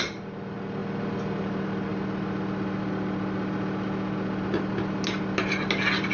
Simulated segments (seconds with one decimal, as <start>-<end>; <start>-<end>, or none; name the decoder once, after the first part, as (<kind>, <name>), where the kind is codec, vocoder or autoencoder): none